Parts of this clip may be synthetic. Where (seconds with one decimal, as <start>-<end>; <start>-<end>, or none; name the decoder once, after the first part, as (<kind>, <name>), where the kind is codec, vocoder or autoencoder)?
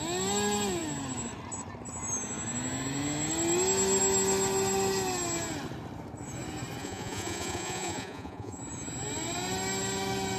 6.8-8.6 (vocoder, Vocos)